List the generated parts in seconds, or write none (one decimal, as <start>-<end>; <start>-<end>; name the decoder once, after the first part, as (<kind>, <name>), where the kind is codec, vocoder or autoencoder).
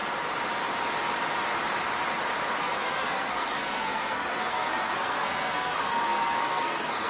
2.6-7.1 (codec, SNAC)